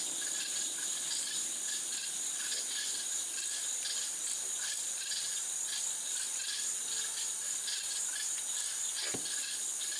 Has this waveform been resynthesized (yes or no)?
no